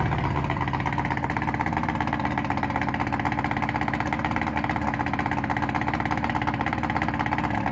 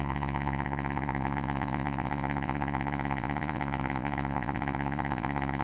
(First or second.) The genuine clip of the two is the first